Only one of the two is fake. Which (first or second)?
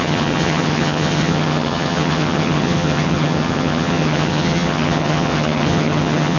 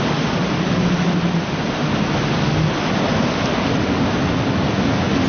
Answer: first